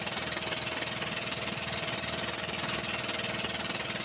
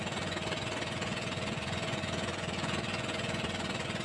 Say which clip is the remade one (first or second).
second